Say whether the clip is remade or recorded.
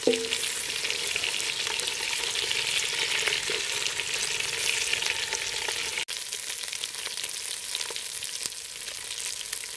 recorded